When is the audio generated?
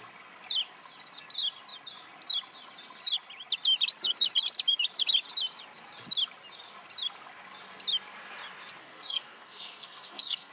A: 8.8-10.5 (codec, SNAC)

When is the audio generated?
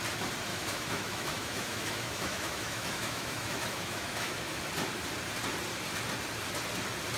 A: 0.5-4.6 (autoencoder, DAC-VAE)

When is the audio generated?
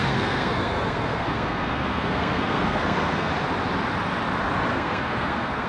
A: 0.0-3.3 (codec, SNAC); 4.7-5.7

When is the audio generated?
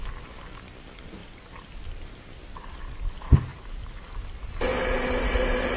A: none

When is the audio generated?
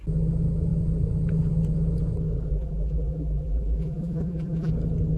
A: 2.5-4.7 (vocoder, BigVGAN v2)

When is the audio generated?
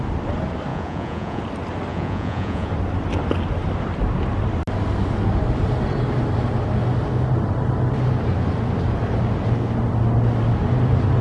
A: 0.7-1.4 (vocoder, Vocos); 1.9-2.7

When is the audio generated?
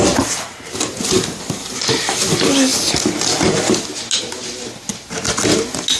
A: none